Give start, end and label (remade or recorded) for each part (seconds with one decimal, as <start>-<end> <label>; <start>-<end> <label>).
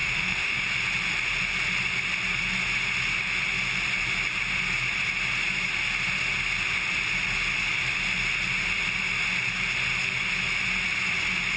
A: 0.0-0.6 remade; 0.6-11.6 recorded